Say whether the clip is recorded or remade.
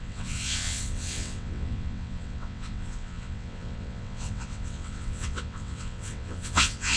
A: remade